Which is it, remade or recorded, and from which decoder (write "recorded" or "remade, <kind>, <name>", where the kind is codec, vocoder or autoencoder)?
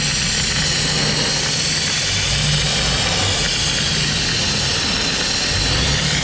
recorded